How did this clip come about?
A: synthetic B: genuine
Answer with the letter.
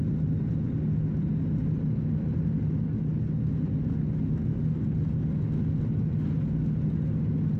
B